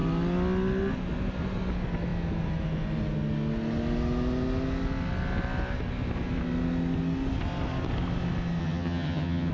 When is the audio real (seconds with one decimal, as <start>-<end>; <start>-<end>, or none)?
0.0-8.6